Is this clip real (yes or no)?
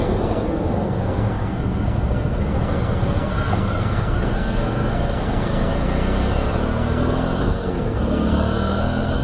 no